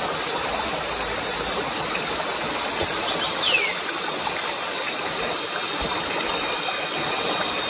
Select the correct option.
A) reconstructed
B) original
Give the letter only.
B